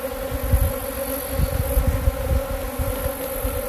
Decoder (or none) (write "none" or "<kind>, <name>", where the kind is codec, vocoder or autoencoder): none